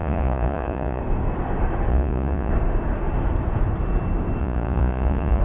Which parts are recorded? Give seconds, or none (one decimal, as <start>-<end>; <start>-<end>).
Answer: 1.0-1.9; 2.5-4.4

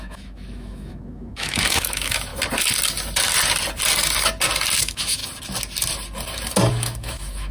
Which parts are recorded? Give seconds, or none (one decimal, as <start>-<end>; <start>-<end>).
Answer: 2.3-4.8; 5.2-6.7

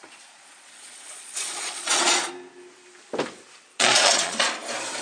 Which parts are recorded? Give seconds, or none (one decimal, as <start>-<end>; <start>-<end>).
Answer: 2.3-3.7; 4.5-5.0

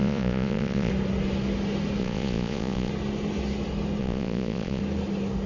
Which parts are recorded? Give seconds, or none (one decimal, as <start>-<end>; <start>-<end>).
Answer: 0.9-2.0; 2.9-4.0; 4.8-5.5

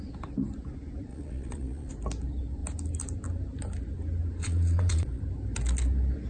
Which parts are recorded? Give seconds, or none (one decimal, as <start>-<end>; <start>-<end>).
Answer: 0.0-1.1; 1.9-4.4; 5.2-6.3

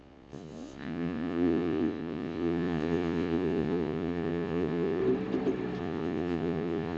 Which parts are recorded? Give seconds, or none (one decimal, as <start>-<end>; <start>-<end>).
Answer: 5.0-5.8

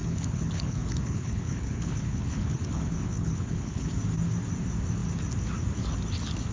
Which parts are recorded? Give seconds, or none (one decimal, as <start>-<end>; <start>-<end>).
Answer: 3.9-6.5

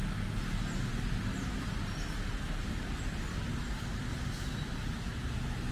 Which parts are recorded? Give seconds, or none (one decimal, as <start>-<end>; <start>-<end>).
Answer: 0.0-5.7